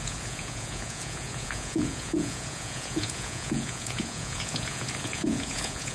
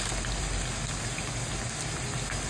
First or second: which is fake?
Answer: first